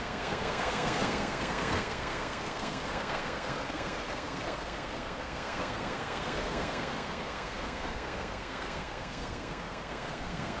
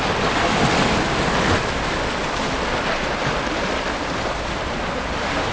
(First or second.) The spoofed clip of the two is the first